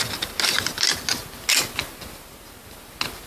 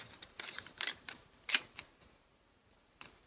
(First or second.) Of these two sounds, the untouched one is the first